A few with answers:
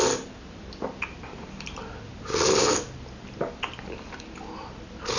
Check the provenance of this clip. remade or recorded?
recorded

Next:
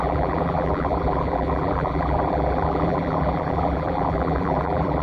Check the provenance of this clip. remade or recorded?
remade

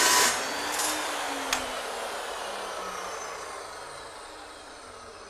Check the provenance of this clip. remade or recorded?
recorded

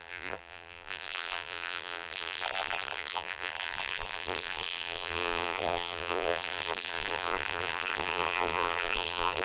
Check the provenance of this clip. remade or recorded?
remade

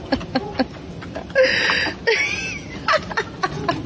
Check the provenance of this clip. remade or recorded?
recorded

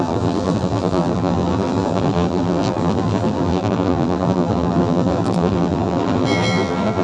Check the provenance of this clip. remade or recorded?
remade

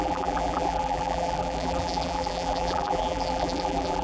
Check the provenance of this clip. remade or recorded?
remade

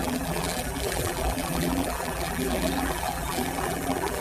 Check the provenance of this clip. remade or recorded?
remade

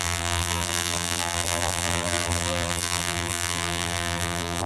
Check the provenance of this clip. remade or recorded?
remade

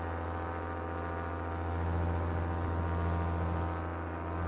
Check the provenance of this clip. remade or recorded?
recorded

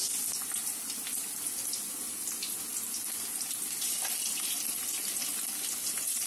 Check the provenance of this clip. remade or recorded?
recorded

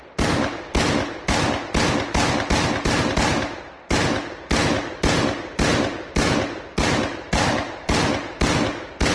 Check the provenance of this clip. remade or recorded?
recorded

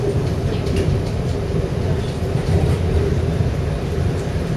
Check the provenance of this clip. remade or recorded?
remade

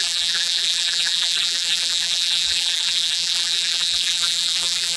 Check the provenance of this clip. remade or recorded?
remade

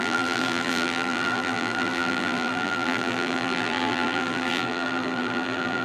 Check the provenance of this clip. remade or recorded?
remade